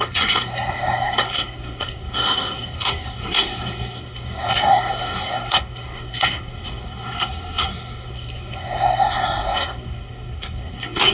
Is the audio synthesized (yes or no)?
yes